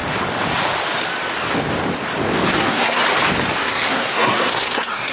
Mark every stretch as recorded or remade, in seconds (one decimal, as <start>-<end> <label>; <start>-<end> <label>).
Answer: 0.0-2.5 recorded; 2.5-3.0 remade; 3.0-3.6 recorded; 3.6-5.1 remade